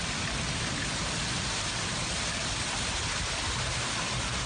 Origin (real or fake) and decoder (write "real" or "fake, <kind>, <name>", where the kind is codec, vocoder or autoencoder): real